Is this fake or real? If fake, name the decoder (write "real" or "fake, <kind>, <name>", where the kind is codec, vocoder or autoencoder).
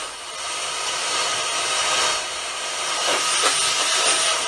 real